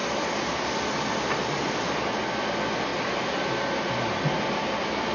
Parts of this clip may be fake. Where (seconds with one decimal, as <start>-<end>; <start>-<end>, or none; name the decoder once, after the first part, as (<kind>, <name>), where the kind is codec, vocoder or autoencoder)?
none